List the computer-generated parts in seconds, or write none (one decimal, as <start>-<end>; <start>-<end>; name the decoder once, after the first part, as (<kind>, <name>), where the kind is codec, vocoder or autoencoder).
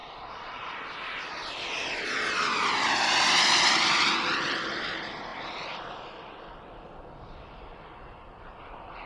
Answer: 0.0-0.7 (vocoder, BigVGAN v2); 5.3-5.8